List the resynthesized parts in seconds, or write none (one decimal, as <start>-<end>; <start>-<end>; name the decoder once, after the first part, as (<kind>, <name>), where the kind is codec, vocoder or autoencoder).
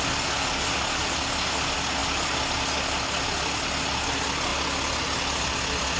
none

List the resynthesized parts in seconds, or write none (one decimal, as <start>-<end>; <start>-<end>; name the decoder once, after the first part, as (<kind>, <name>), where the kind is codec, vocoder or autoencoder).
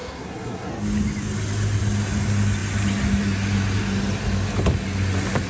0.0-0.7 (codec, SNAC)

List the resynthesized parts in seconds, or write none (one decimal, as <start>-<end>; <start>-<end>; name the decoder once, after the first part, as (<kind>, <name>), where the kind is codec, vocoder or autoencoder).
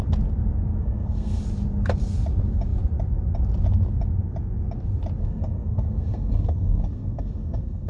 0.8-1.4 (codec, SNAC); 5.2-7.9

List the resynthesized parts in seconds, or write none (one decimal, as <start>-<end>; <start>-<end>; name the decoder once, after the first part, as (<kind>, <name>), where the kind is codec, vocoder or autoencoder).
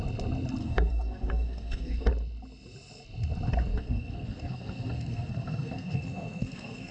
0.6-2.1 (codec, SNAC); 3.7-6.9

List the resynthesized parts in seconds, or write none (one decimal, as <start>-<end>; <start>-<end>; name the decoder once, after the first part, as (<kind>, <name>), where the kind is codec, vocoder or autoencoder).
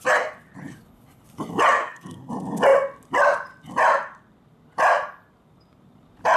1.8-2.3 (codec, SNAC)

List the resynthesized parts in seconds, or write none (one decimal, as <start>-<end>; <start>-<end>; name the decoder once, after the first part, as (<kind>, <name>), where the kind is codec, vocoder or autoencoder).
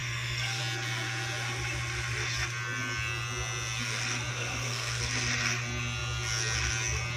0.0-0.6 (codec, SNAC); 4.3-5.0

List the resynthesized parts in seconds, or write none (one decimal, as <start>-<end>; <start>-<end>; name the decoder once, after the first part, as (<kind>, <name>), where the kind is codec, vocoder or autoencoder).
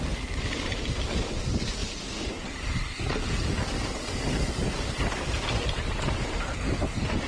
none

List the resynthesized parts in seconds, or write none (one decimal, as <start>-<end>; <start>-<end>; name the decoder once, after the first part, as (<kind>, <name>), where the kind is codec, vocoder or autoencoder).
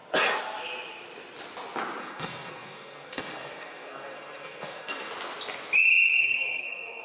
2.0-5.1 (codec, SNAC); 6.2-7.0